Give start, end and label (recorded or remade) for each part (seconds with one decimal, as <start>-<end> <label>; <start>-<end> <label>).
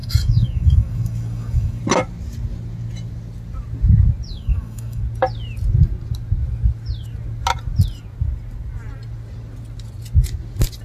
0.0-1.8 remade; 1.8-4.3 recorded; 4.3-5.0 remade; 5.0-10.8 recorded